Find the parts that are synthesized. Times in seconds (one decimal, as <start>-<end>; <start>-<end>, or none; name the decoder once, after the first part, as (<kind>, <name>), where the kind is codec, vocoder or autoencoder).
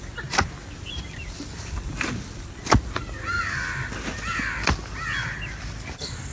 0.6-3.0 (vocoder, BigVGAN v2)